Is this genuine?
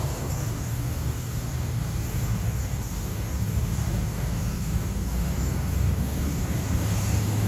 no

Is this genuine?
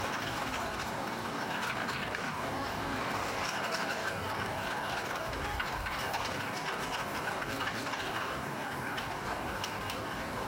no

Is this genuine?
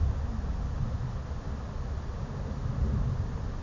yes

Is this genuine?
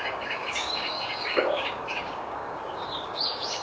no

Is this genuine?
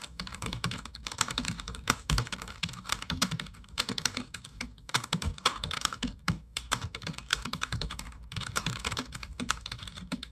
no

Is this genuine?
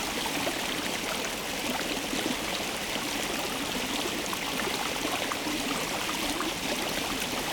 yes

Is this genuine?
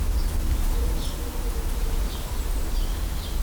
yes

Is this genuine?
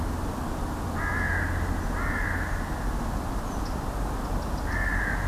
yes